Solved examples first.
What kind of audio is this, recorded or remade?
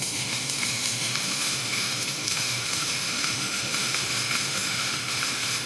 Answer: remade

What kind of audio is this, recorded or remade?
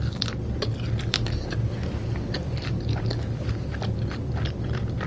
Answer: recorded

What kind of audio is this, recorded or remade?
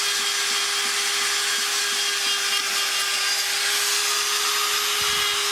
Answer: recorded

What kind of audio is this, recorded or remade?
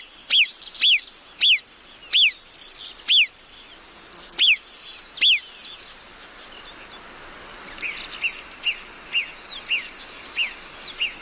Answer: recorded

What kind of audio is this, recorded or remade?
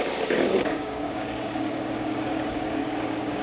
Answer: remade